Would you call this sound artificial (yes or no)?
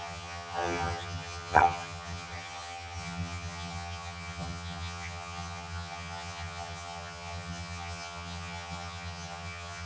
yes